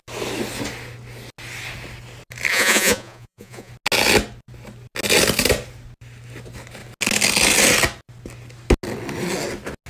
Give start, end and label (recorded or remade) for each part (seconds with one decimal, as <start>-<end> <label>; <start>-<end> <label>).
0.0-2.5 recorded; 2.5-3.7 remade; 3.7-9.9 recorded